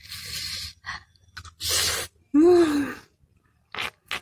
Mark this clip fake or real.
real